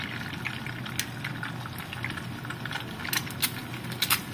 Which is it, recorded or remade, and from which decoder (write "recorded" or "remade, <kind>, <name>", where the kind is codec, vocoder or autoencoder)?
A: recorded